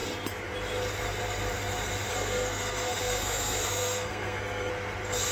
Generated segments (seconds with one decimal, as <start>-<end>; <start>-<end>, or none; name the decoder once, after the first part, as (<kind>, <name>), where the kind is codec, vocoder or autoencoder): 2.1-4.7 (codec, SNAC)